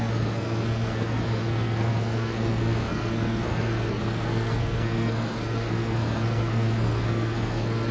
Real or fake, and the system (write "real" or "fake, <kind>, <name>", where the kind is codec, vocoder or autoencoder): fake, codec, SNAC